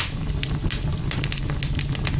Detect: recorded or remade recorded